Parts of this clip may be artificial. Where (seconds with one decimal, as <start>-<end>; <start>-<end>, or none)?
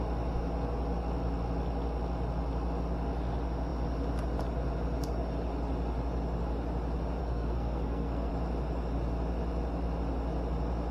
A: 7.2-8.3